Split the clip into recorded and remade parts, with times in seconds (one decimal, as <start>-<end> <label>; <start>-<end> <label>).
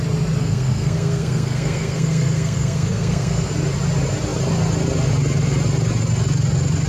0.0-0.4 recorded; 0.4-3.5 remade; 3.5-6.9 recorded